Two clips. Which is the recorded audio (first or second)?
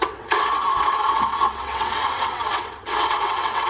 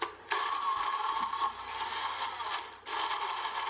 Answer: second